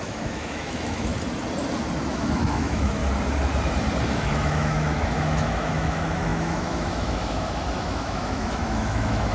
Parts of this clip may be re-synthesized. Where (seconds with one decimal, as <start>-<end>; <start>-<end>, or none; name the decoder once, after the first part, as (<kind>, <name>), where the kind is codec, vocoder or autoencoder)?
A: 0.0-1.1 (autoencoder, DAC-VAE); 2.1-3.0; 4.1-9.3